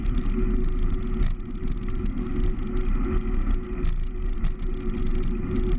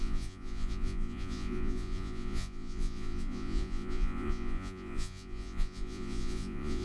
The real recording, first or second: first